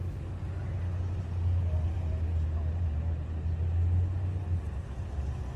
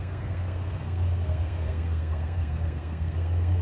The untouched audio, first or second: first